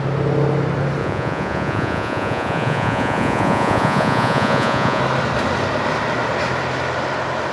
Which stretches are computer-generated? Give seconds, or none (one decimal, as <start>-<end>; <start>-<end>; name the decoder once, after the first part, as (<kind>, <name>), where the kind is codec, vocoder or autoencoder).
1.0-5.0 (vocoder, Vocos)